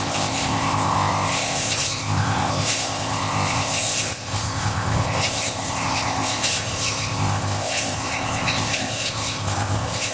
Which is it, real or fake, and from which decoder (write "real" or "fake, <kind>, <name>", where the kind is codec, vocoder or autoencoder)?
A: fake, codec, ZipCodec